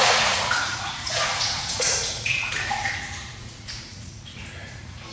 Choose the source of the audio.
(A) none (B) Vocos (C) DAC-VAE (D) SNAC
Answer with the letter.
B